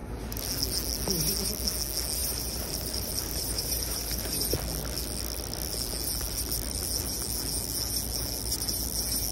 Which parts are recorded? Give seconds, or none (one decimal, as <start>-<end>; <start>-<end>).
0.0-2.2; 4.4-9.3

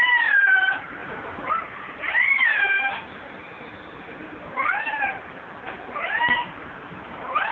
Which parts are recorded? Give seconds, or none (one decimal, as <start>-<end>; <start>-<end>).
1.0-1.5; 2.5-6.6

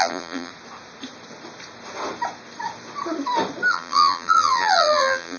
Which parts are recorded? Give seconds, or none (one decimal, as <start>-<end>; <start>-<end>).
0.5-3.7

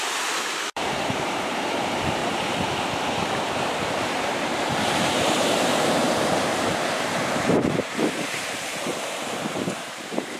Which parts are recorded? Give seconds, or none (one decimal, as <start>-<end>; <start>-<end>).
2.2-3.4; 8.9-9.8

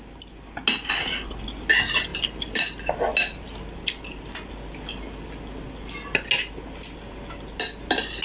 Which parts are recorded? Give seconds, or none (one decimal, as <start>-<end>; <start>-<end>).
0.0-2.1; 2.6-8.2

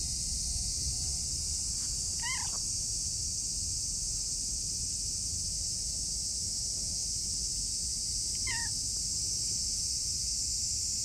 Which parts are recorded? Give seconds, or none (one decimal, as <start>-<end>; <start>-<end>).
0.0-5.3; 6.0-7.0; 9.0-11.0

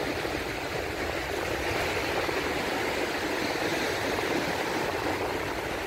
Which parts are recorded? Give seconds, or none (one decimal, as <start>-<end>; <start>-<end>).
0.0-5.9

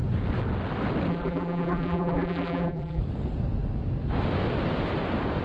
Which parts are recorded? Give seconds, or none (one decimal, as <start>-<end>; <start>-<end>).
0.0-1.1; 3.0-5.4